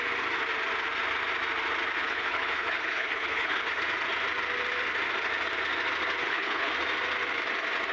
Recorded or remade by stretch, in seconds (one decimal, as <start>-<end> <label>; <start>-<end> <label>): 0.0-2.0 recorded; 2.0-3.8 remade; 3.8-6.2 recorded; 6.2-6.7 remade; 6.7-7.9 recorded